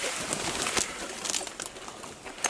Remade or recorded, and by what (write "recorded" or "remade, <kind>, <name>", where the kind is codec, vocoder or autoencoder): recorded